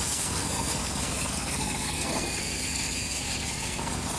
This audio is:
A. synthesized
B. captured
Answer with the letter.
A